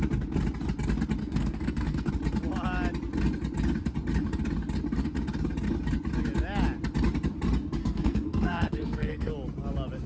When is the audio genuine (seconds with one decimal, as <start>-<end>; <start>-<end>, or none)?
0.0-1.2; 2.1-7.8; 9.3-10.1